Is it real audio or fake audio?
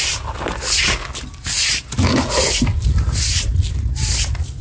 real